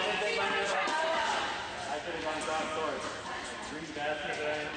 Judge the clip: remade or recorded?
recorded